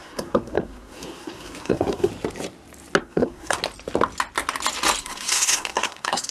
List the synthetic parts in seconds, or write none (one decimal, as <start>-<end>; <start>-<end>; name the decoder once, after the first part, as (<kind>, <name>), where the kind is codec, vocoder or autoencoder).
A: 0.0-2.1 (codec, SNAC); 3.0-3.6; 5.0-6.3